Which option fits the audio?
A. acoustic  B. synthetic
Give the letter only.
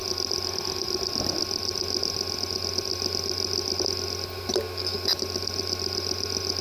A